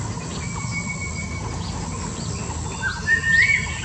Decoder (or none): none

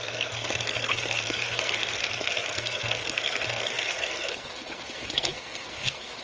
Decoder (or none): codec, SNAC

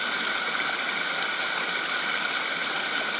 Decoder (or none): none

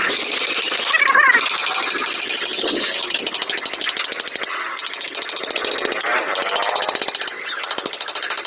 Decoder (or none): none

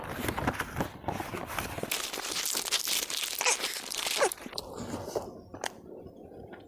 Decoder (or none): none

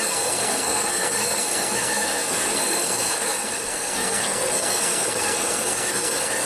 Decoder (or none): codec, SNAC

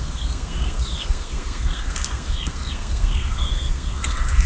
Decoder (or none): codec, SNAC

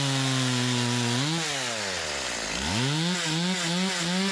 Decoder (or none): none